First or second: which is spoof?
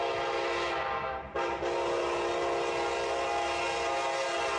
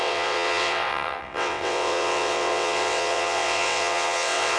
second